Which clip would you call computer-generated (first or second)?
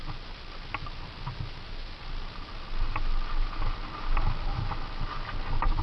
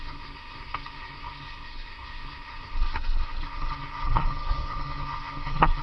second